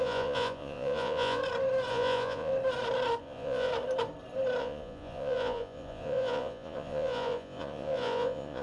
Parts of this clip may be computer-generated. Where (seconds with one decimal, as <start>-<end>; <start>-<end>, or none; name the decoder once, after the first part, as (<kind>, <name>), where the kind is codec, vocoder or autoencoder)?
0.0-1.4 (vocoder, Vocos); 1.9-2.5; 3.2-3.7; 4.6-8.6

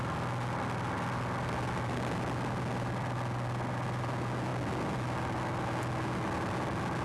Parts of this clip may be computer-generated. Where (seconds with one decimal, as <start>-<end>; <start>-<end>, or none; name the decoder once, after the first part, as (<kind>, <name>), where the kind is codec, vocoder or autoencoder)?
none

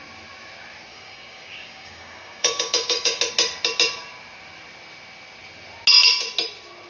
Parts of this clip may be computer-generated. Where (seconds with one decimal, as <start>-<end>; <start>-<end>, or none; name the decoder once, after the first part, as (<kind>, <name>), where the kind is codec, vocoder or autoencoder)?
0.9-3.2 (codec, DAC)

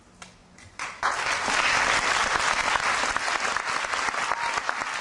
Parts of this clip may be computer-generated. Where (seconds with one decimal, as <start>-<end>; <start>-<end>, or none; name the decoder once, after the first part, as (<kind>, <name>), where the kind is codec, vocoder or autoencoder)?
0.4-1.1 (vocoder, Vocos)

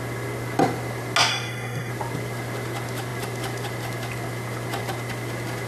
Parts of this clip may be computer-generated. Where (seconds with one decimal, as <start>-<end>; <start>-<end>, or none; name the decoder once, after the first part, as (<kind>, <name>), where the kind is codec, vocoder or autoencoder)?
1.3-1.9 (codec, SNAC)